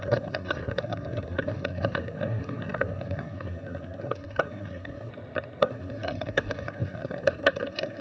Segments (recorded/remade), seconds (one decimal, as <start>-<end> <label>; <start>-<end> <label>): 0.0-5.1 remade; 5.1-5.6 recorded; 5.6-8.0 remade